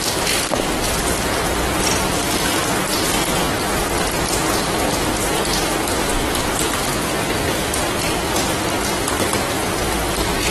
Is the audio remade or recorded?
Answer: recorded